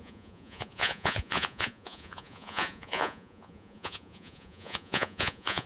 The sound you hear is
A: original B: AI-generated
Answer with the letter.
B